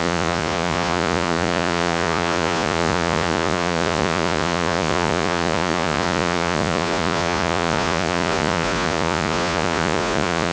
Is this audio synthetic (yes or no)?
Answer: yes